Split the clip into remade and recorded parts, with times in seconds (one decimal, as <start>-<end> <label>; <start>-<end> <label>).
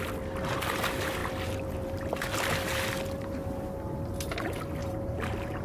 0.0-4.8 recorded; 4.8-5.6 remade